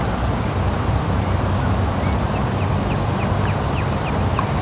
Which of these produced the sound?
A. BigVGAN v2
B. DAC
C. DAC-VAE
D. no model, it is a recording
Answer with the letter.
D